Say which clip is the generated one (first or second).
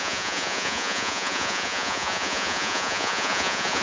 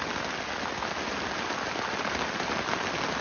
first